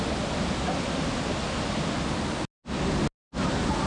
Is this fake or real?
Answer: real